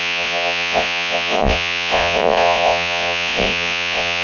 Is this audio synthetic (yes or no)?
yes